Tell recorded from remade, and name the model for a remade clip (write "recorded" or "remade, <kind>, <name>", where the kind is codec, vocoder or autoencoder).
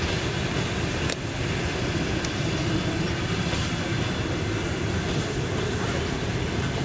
recorded